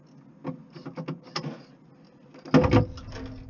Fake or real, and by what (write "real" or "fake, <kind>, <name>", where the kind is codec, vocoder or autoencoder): real